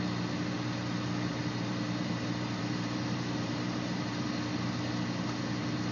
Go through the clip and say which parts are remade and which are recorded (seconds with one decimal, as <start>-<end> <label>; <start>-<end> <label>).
0.0-1.3 recorded; 1.3-4.3 remade; 4.3-5.9 recorded